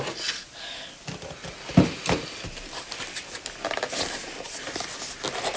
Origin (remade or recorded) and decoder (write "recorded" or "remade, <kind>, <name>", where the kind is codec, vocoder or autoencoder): recorded